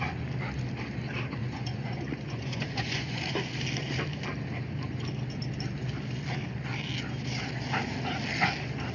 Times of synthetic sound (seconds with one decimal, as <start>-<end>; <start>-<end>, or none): 1.4-3.2